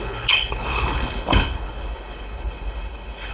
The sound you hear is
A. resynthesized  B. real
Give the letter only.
A